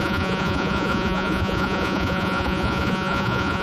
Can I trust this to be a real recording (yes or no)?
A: no